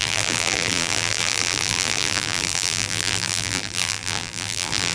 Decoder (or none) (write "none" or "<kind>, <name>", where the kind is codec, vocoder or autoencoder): vocoder, BigVGAN v2